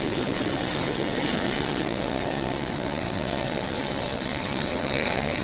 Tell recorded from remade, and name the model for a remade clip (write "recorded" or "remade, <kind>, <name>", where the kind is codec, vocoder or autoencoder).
remade, vocoder, WaveNeXt